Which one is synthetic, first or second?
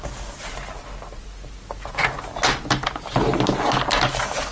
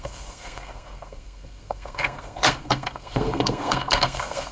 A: second